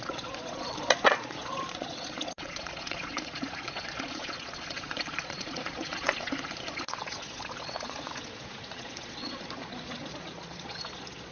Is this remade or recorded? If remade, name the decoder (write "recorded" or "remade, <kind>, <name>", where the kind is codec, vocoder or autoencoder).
remade, vocoder, Vocos